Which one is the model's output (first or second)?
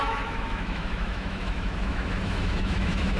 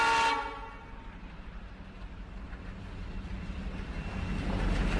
first